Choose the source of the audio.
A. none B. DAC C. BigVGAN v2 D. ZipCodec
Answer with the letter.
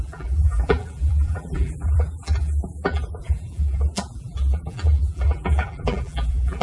C